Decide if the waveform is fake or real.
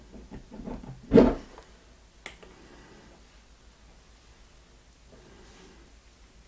real